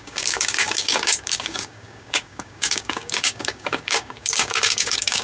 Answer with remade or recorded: remade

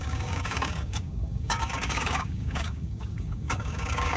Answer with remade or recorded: remade